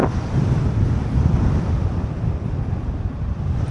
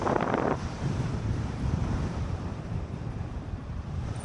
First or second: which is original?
first